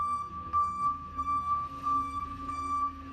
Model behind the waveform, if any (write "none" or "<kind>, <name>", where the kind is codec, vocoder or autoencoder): codec, SNAC